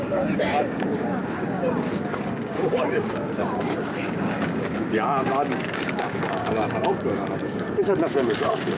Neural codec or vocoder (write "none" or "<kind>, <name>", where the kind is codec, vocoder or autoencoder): codec, DAC